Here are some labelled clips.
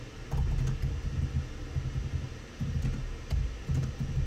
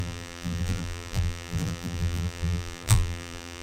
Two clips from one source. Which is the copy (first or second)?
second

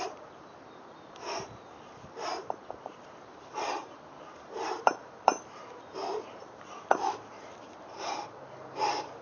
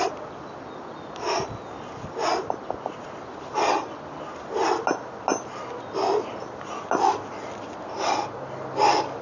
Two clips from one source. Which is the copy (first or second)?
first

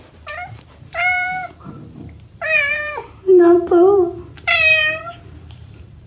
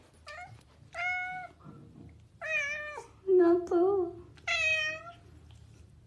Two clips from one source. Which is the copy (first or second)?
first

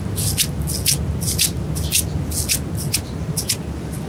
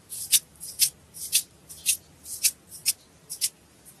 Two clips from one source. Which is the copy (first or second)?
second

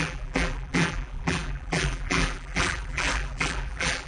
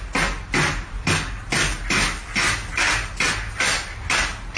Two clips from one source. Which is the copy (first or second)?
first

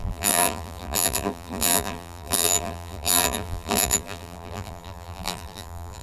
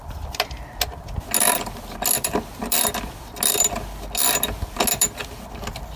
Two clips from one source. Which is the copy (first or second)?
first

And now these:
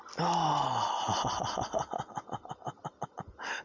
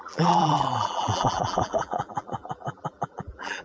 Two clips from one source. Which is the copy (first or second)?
second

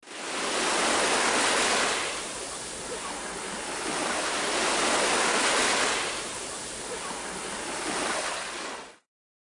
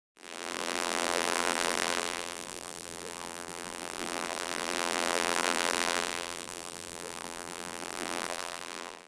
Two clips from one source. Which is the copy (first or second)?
second